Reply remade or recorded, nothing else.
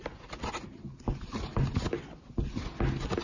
recorded